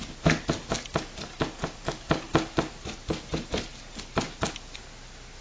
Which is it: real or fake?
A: real